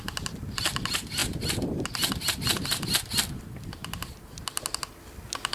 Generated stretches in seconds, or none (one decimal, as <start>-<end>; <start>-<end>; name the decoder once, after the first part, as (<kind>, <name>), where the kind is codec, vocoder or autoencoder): none